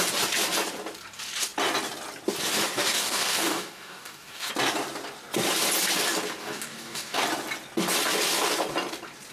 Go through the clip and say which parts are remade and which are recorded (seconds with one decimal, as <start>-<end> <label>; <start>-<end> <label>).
0.0-2.9 recorded; 2.9-4.5 remade; 4.5-6.4 recorded; 6.4-7.2 remade; 7.2-9.3 recorded